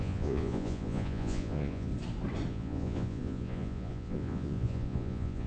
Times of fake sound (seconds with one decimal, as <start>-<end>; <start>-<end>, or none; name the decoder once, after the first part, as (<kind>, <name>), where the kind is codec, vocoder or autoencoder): 0.0-1.9 (vocoder, Vocos); 2.5-5.5